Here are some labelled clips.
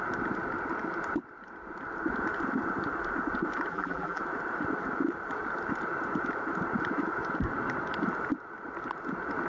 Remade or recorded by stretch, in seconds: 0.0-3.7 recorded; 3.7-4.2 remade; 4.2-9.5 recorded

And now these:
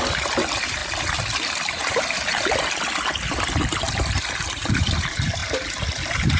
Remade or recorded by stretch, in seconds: 0.0-1.8 remade; 1.8-3.3 recorded; 3.3-6.4 remade

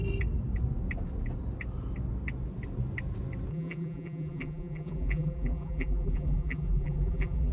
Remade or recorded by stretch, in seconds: 0.0-3.5 recorded; 3.5-7.5 remade

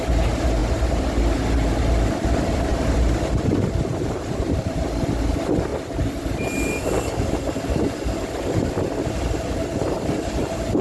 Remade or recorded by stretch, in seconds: 0.0-0.6 recorded; 0.6-1.2 remade; 1.2-2.7 recorded; 2.7-5.3 remade; 5.3-5.7 recorded; 5.7-9.9 remade; 9.9-10.8 recorded